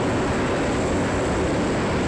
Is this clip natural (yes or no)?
yes